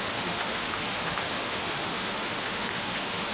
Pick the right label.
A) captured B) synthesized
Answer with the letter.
B